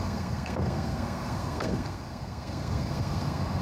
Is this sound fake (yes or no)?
yes